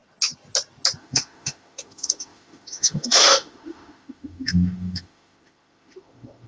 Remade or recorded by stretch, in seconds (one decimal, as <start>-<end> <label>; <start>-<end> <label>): 0.0-1.0 recorded; 1.0-6.5 remade